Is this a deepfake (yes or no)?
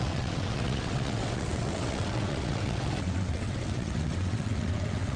yes